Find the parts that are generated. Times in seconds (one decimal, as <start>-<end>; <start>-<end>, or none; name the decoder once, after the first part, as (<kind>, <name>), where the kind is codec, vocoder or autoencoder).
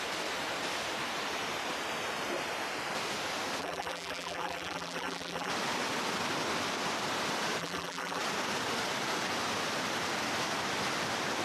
3.6-5.5 (vocoder, BigVGAN v2); 7.6-8.2